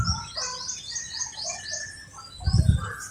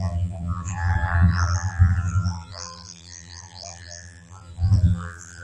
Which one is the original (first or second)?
first